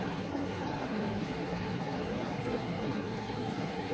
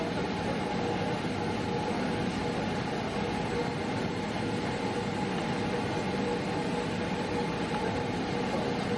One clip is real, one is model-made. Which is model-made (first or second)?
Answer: first